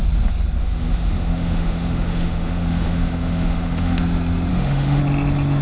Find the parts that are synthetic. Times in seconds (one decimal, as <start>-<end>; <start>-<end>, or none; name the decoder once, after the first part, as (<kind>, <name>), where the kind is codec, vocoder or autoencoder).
0.6-4.0 (autoencoder, DAC-VAE); 4.5-5.0